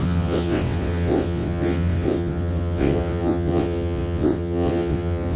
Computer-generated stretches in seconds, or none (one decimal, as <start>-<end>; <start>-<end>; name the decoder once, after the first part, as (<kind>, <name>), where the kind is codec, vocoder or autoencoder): 0.0-5.4 (vocoder, WaveNeXt)